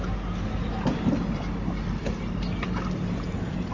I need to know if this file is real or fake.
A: real